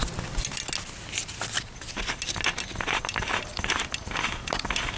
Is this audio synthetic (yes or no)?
no